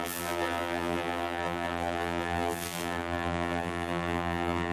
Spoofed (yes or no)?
yes